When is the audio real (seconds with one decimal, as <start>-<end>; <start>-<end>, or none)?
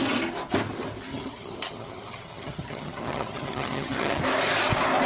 0.0-1.1; 4.2-5.1